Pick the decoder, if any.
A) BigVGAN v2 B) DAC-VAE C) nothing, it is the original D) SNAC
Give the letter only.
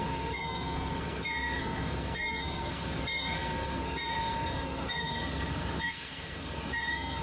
D